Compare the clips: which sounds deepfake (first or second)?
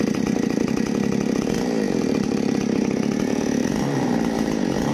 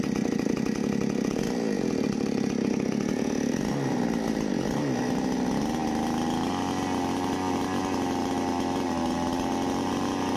first